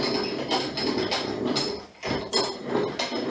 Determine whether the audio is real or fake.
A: real